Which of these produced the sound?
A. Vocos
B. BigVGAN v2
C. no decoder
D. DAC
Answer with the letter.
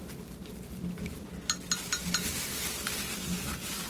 C